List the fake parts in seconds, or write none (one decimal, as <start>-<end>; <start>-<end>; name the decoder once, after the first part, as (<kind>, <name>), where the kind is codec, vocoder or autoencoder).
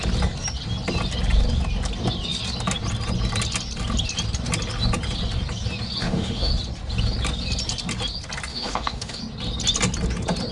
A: 6.0-6.5 (autoencoder, DAC-VAE); 8.5-9.2